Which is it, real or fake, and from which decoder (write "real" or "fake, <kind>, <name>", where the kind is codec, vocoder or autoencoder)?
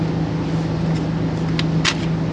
real